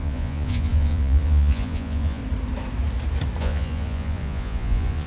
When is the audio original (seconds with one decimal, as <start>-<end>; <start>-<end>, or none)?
2.2-3.4